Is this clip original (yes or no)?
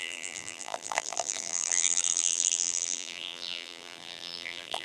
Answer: no